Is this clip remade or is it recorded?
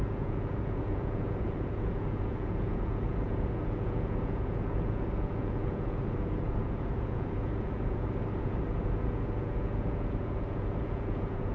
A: remade